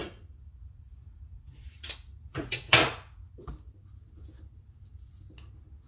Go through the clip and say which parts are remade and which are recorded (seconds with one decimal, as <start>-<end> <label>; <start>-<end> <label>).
0.0-3.5 remade; 3.5-5.9 recorded